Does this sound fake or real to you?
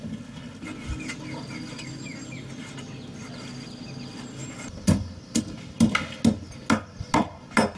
real